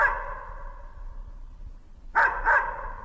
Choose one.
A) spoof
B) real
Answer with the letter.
B